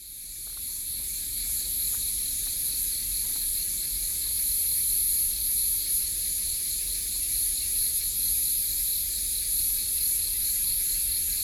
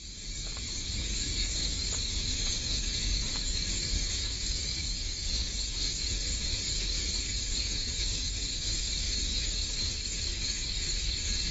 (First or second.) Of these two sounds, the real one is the first